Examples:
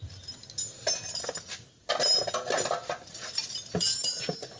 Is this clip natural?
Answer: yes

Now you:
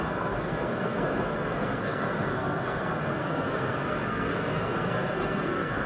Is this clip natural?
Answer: no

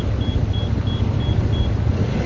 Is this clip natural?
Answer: yes